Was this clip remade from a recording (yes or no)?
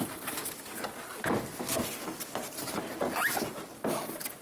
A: no